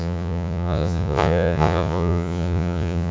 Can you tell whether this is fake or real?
fake